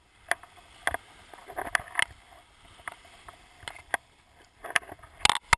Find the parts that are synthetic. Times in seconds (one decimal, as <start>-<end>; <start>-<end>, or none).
none